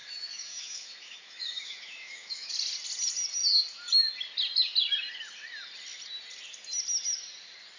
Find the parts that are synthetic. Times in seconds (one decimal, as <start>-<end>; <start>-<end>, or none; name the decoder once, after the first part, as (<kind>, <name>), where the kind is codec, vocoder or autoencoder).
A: 0.0-2.5 (autoencoder, DAC-VAE)